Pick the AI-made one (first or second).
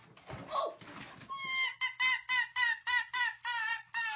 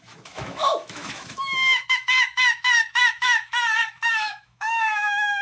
second